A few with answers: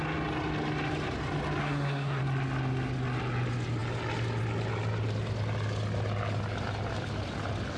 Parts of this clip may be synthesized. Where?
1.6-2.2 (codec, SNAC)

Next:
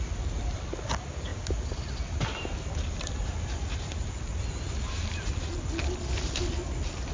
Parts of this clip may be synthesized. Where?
none

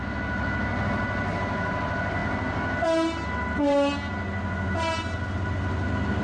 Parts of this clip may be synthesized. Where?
none

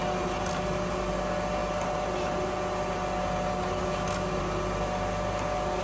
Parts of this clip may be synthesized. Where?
none

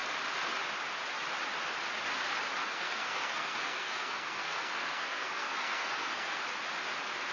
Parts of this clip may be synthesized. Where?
2.6-6.4 (codec, SNAC)

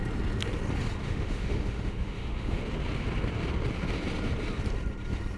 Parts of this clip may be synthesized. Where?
1.0-2.6 (autoencoder, DAC-VAE)